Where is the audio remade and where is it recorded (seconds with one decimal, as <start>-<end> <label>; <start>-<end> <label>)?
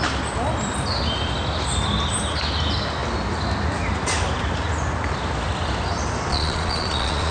0.0-6.3 recorded; 6.3-7.3 remade